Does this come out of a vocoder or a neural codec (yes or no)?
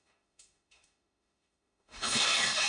yes